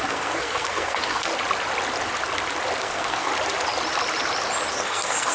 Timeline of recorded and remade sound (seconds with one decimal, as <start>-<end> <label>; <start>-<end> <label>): 0.0-1.3 remade; 1.3-2.8 recorded; 2.8-3.3 remade; 3.3-4.7 recorded; 4.7-5.3 remade